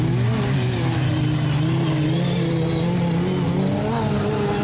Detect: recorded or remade recorded